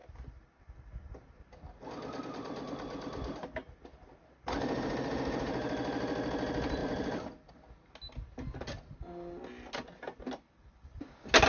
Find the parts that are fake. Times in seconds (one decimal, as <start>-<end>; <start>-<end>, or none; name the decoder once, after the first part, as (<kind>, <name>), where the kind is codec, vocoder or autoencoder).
none